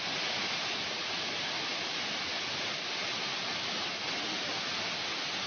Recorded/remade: recorded